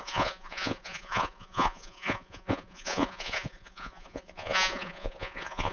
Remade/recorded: remade